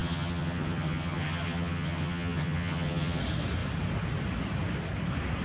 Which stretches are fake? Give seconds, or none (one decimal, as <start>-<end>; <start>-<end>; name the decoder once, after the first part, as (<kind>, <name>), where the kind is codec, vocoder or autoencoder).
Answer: 0.0-3.2 (vocoder, HiFi-GAN)